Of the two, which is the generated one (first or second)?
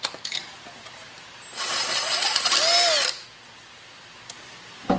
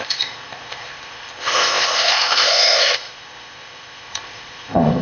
second